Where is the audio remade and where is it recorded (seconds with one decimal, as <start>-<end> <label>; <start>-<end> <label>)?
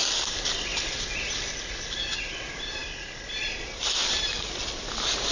0.0-0.9 remade; 0.9-5.3 recorded